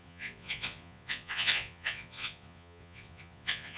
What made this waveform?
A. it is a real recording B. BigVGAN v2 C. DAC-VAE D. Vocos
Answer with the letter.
D